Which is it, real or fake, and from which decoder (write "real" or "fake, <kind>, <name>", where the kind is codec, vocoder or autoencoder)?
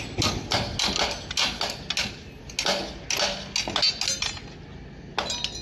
real